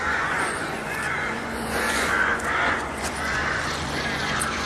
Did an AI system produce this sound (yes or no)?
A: yes